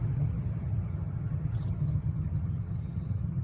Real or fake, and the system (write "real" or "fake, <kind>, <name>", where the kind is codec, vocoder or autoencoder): fake, vocoder, HiFi-GAN